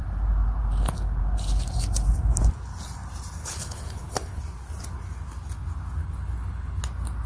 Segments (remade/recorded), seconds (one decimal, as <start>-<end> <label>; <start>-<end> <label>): 0.0-3.4 recorded; 3.4-4.4 remade; 4.4-6.0 recorded; 6.0-6.8 remade; 6.8-7.3 recorded